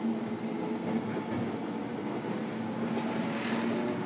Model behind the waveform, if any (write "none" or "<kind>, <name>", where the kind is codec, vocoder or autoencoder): none